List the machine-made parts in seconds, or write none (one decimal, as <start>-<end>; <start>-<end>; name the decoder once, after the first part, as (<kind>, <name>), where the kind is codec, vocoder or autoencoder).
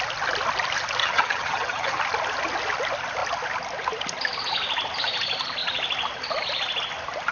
1.0-2.0 (vocoder, HiFi-GAN)